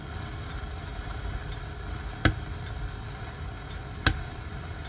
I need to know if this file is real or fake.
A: real